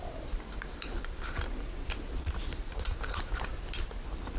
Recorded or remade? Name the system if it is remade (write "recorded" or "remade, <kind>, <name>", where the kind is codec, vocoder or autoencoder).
recorded